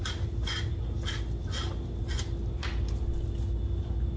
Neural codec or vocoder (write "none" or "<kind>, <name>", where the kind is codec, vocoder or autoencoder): none